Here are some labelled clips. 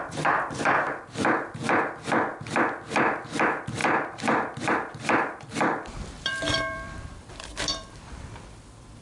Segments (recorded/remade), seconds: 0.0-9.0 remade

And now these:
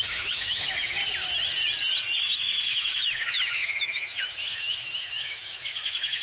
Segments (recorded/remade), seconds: 0.0-1.0 remade; 1.0-2.2 recorded; 2.2-6.2 remade